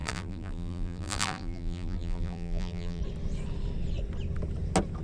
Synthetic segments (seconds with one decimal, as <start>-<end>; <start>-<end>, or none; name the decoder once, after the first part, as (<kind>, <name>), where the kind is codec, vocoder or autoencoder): 0.0-3.0 (vocoder, BigVGAN v2)